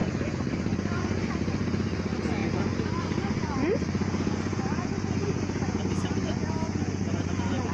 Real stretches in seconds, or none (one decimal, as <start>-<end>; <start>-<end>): none